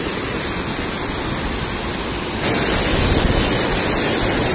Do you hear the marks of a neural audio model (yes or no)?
no